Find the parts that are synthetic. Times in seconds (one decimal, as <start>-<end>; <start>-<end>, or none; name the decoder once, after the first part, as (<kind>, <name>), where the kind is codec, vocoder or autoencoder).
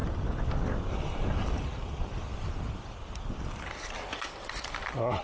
0.9-2.3 (vocoder, BigVGAN v2)